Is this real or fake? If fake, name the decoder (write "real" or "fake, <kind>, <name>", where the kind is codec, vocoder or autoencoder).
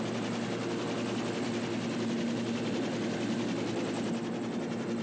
real